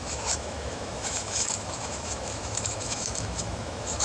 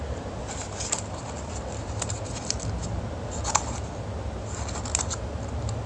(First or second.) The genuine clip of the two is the second